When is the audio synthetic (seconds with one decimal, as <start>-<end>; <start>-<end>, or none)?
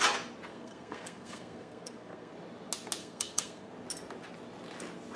0.5-2.3; 3.0-3.7